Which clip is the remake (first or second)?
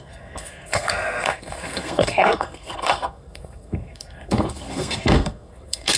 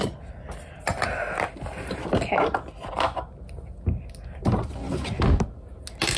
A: first